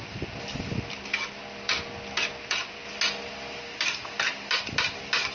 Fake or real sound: real